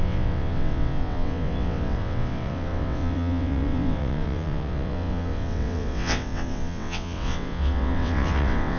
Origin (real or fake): fake